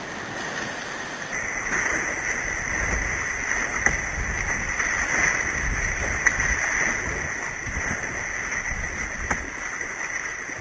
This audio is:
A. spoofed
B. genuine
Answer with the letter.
B